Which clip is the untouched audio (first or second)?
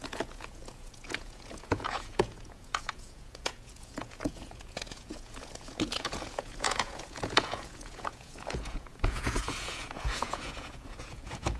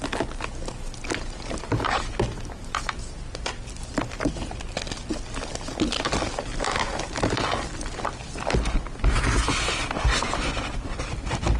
second